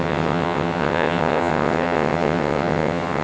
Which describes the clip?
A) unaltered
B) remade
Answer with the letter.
B